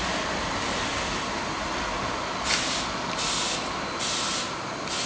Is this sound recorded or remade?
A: recorded